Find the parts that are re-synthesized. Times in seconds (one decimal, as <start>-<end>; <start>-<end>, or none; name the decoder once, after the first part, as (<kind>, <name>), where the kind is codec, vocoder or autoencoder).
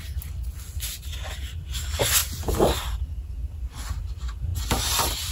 2.2-3.0 (vocoder, BigVGAN v2); 3.4-4.0